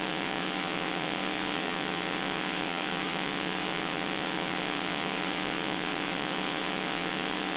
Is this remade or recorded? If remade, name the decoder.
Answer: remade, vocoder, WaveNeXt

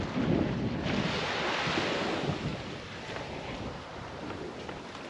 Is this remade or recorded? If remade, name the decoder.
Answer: recorded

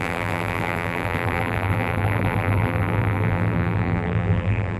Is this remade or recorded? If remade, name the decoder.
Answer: remade, vocoder, BigVGAN v2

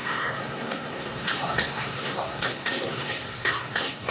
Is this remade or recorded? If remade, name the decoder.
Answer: remade, codec, SNAC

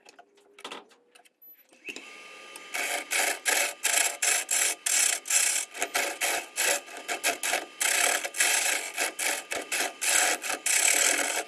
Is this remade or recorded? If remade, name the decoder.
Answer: recorded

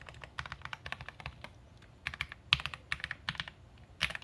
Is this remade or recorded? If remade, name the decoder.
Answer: recorded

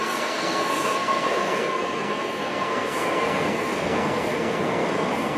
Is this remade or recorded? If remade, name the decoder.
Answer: remade, codec, SNAC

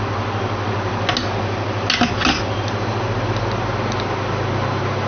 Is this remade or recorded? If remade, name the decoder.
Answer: recorded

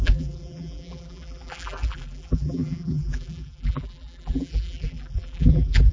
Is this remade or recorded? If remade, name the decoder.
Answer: remade, vocoder, BigVGAN v2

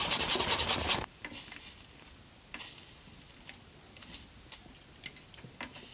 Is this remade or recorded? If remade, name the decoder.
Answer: recorded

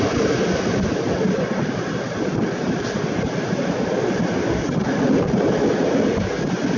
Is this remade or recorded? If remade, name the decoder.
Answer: recorded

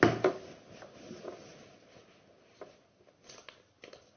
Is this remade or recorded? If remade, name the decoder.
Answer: recorded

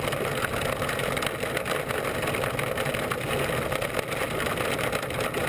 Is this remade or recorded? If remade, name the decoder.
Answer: recorded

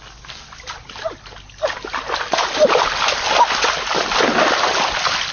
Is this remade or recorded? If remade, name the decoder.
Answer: recorded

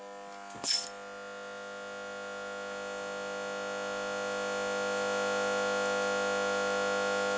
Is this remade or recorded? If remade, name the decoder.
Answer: recorded